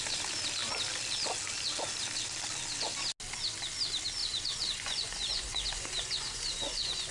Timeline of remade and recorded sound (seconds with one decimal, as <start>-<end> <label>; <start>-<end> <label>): 0.0-4.2 recorded; 4.2-7.1 remade

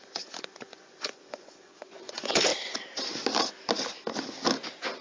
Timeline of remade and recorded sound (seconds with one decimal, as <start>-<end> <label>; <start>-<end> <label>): 0.0-2.5 remade; 2.5-5.0 recorded

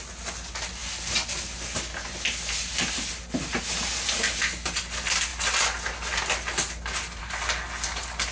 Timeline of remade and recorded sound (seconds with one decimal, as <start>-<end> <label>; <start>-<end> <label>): 0.0-8.3 recorded

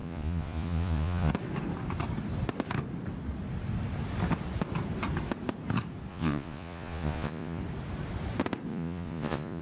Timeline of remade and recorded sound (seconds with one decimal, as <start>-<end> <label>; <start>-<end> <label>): 0.0-1.3 remade; 1.3-6.1 recorded; 6.1-7.6 remade; 7.6-8.7 recorded; 8.7-9.6 remade

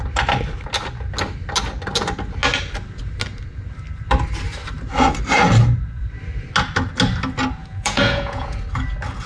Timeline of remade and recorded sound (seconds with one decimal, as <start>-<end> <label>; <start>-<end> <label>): 0.0-7.6 recorded; 7.6-8.6 remade; 8.6-9.3 recorded